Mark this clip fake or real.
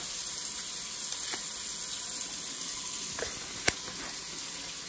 real